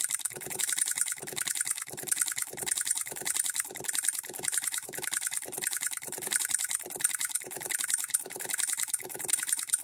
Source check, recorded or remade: remade